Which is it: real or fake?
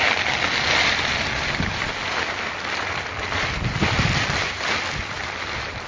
real